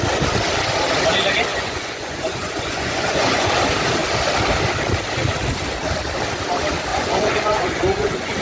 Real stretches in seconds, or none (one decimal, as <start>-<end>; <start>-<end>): 0.0-1.5; 3.5-6.9